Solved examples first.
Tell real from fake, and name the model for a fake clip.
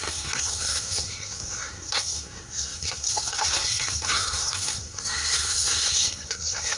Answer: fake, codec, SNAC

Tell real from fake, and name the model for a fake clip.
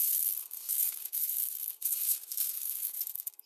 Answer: fake, codec, SNAC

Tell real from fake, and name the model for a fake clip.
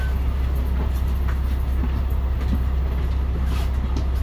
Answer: real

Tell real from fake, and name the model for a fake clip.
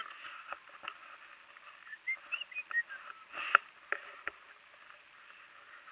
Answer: real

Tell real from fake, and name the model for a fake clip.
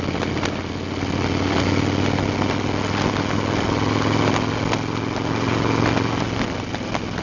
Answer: real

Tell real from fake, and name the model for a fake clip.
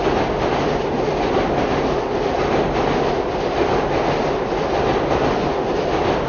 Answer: real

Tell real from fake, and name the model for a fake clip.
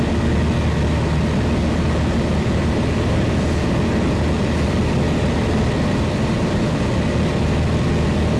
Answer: real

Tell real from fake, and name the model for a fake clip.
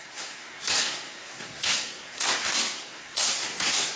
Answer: fake, codec, SNAC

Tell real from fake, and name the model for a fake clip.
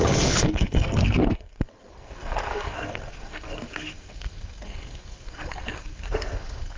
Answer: fake, codec, SNAC